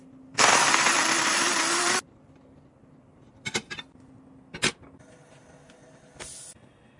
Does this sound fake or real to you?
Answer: fake